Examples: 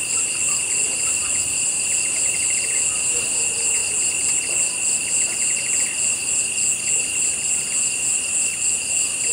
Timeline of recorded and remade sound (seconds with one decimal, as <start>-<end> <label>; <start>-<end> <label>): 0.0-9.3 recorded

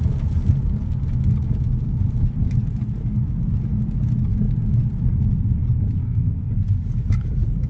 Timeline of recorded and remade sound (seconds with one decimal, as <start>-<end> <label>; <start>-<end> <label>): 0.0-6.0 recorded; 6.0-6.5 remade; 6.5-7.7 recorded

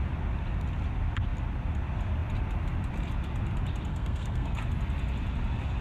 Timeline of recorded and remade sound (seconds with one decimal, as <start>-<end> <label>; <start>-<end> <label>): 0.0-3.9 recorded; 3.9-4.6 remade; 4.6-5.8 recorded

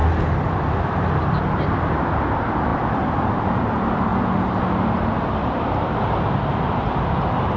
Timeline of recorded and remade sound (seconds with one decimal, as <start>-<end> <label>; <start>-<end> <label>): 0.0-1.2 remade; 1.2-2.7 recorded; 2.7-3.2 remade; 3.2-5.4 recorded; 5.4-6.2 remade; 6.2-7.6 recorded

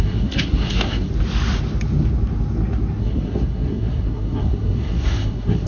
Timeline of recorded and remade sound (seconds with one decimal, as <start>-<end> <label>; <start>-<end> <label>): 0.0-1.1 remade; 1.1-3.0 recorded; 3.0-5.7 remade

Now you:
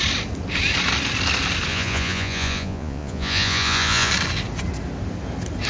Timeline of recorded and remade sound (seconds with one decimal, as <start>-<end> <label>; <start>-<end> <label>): 0.0-1.7 recorded; 1.7-4.1 remade; 4.1-5.7 recorded

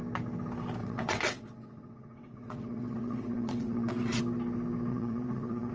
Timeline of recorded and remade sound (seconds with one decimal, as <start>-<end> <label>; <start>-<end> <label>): 0.0-0.8 recorded; 0.8-4.2 remade; 4.2-4.9 recorded; 4.9-5.7 remade